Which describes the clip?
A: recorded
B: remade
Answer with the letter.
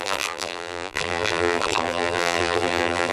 B